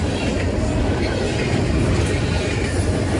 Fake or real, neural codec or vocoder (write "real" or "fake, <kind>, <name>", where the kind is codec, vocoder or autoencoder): real